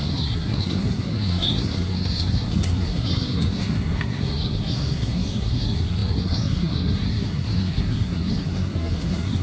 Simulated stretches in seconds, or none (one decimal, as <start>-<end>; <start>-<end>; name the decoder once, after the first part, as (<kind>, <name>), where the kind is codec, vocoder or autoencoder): 0.0-9.4 (codec, SNAC)